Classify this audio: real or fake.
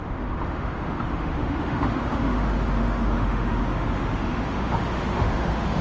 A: fake